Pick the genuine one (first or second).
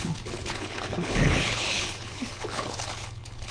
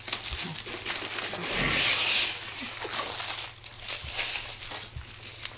second